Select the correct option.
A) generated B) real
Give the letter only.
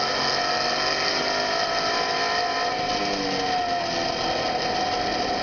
B